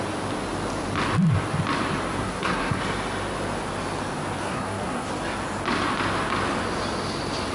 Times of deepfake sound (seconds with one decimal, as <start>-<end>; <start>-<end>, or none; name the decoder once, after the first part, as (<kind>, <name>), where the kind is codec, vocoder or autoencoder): 2.2-2.8 (codec, SNAC); 4.4-5.1

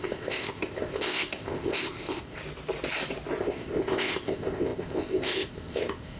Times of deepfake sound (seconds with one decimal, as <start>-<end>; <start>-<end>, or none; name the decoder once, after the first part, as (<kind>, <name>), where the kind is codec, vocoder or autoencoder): 0.0-2.4 (codec, ZipCodec); 3.4-6.2

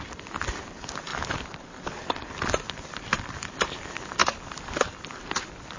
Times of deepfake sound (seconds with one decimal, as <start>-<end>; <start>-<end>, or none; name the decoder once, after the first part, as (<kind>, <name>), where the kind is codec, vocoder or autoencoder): 1.1-3.5 (vocoder, BigVGAN v2); 4.2-5.3

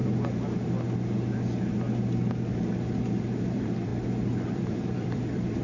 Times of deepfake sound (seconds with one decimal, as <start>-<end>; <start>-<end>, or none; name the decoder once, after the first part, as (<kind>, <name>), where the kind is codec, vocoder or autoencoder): 3.4-3.9 (vocoder, BigVGAN v2); 4.5-5.6